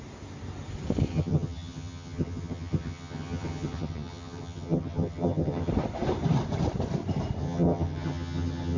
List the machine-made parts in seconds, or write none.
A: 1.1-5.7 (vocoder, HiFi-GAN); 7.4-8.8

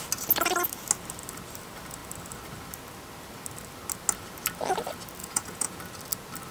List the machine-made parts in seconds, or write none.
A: 5.2-5.8 (vocoder, Vocos)

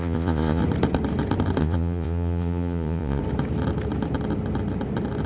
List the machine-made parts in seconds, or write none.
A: 0.0-0.6 (vocoder, Vocos); 1.6-3.2

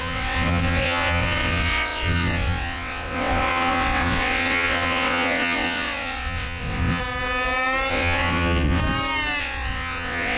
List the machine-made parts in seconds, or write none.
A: 0.0-7.0 (vocoder, WaveNeXt); 7.9-8.8; 9.4-10.4

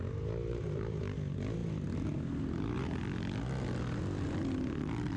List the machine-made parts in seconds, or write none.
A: none